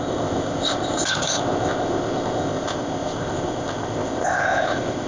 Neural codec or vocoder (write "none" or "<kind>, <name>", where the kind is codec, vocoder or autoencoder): codec, ZipCodec